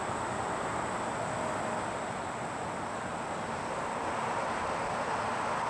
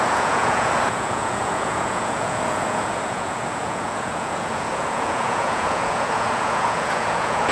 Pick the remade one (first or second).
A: second